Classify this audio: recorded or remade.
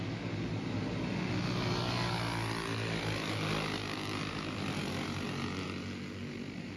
recorded